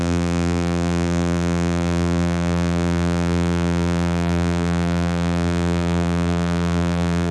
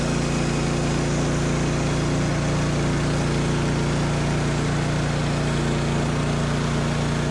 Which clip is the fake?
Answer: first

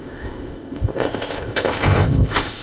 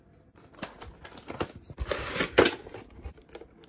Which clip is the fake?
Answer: first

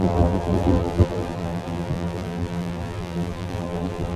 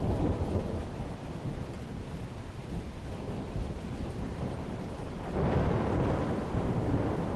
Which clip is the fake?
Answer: first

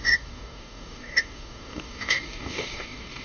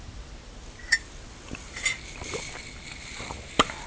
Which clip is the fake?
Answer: first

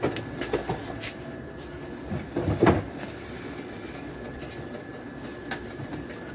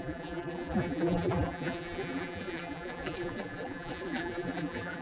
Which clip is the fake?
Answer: second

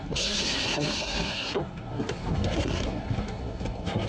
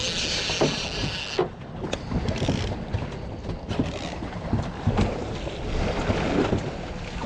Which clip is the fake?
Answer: first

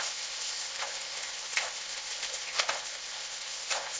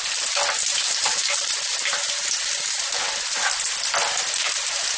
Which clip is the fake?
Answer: first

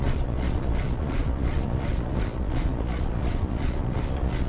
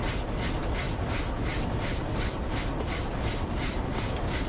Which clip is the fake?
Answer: first